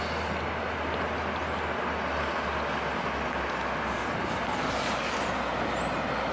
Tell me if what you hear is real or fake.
real